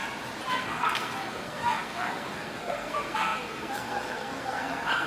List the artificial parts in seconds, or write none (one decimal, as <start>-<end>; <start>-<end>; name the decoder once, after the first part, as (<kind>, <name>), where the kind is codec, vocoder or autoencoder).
0.5-5.1 (codec, SNAC)